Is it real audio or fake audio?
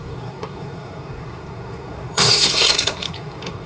fake